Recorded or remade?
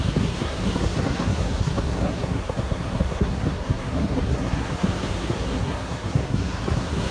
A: remade